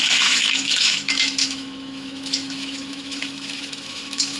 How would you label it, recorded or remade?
remade